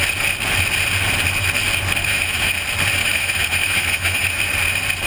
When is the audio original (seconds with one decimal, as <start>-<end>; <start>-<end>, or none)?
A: 0.0-2.0; 2.5-3.0; 4.4-5.1

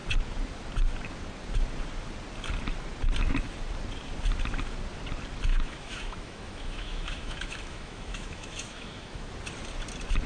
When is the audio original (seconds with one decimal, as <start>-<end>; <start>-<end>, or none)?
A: 0.0-5.5; 9.3-10.3

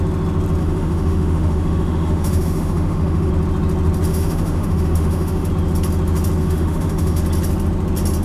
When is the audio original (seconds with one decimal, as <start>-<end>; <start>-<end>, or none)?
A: 0.0-0.6; 3.3-4.1; 5.5-6.4; 7.2-8.2

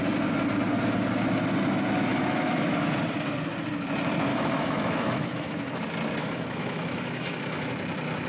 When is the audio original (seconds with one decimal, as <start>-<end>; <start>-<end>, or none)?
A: 0.0-2.1; 2.7-4.3; 5.8-6.2; 7.7-8.3

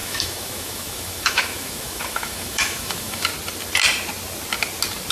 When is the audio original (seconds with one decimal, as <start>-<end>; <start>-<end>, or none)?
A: 3.3-5.1

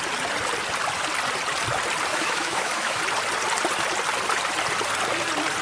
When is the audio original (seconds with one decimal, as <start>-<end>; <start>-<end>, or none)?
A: 0.0-2.1; 3.0-5.6

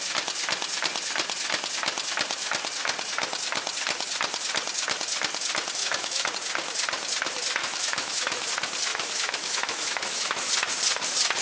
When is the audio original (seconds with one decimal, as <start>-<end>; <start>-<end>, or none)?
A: 0.0-5.8; 6.3-7.6; 8.5-8.9; 10.5-11.4